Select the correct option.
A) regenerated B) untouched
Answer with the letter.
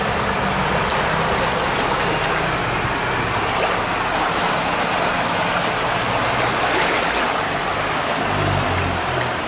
B